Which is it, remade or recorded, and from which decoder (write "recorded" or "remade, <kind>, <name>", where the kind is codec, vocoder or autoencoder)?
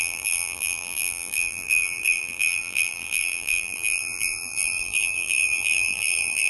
remade, vocoder, BigVGAN v2